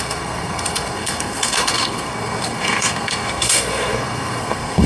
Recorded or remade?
remade